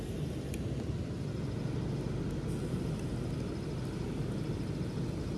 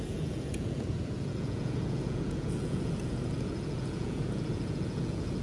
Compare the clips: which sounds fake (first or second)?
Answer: second